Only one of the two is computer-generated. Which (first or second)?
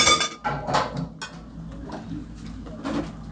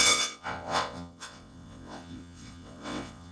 second